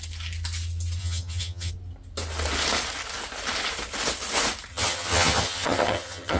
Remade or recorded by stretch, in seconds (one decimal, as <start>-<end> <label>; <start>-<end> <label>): 0.0-1.0 recorded; 1.0-1.7 remade; 1.7-4.7 recorded; 4.7-6.4 remade